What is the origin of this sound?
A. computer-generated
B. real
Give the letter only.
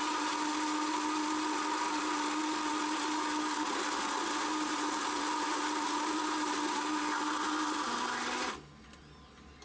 B